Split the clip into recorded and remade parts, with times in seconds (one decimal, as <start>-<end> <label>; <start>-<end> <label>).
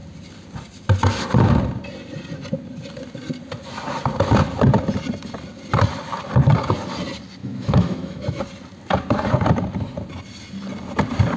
0.0-7.4 recorded; 7.4-8.4 remade; 8.4-11.4 recorded